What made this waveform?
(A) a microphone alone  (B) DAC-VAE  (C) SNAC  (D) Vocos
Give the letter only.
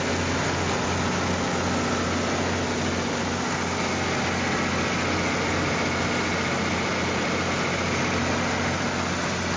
A